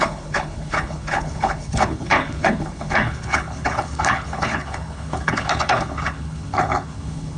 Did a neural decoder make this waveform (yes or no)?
yes